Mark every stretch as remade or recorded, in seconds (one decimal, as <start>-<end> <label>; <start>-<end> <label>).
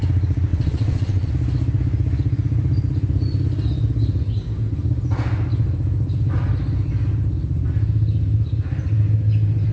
0.0-0.5 recorded; 0.5-1.3 remade; 1.3-9.7 recorded